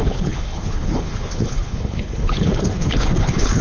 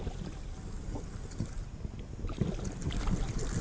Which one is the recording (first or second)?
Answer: second